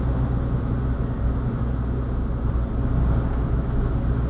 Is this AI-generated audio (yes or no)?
no